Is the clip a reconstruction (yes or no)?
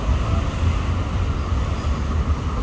no